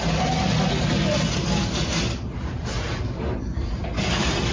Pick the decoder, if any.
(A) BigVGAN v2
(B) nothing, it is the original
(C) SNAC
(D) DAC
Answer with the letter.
B